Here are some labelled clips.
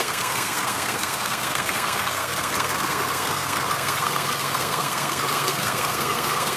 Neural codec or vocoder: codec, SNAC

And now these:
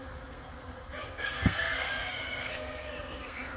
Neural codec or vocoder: codec, SNAC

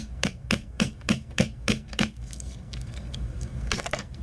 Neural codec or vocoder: codec, SNAC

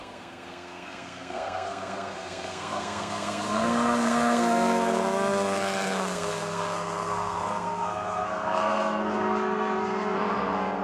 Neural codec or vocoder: codec, SNAC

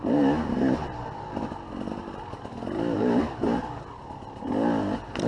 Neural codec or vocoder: none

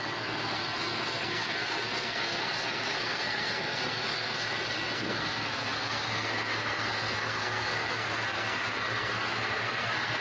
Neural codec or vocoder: codec, SNAC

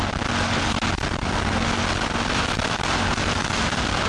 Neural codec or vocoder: none